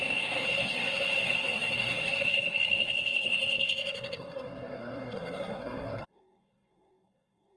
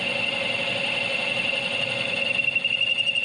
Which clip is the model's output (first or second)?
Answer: first